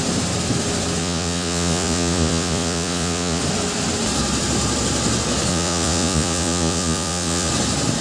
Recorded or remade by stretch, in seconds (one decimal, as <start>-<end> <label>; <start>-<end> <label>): 0.0-1.0 recorded; 1.0-3.4 remade; 3.4-5.5 recorded; 5.5-7.5 remade; 7.5-8.0 recorded